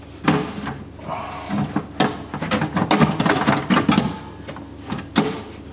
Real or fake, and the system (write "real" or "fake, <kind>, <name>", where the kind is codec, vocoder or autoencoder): real